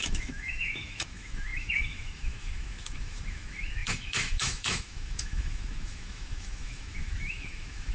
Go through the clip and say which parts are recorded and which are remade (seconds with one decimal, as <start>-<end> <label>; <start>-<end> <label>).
0.0-7.9 remade